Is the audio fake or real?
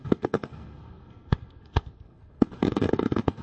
fake